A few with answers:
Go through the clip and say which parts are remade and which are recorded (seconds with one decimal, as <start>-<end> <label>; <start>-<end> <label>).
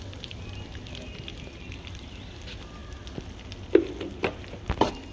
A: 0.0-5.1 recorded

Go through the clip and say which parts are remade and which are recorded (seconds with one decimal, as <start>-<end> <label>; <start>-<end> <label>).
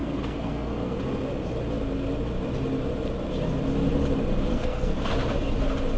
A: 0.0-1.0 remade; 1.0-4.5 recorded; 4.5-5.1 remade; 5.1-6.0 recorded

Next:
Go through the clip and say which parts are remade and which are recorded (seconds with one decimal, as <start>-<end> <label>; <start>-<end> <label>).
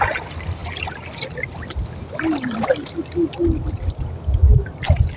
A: 0.0-5.2 recorded